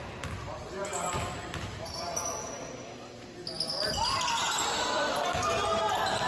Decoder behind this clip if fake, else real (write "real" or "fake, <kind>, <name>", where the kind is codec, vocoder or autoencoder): real